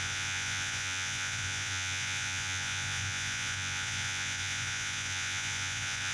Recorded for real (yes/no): no